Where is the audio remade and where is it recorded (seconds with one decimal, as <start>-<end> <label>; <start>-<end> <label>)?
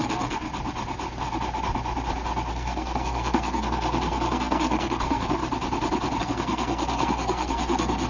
0.0-0.5 remade; 0.5-2.5 recorded; 2.5-5.4 remade; 5.4-6.2 recorded; 6.2-8.1 remade